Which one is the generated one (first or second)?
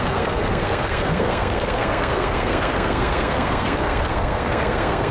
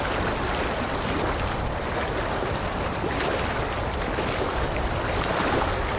first